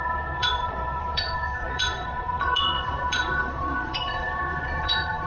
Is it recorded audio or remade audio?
remade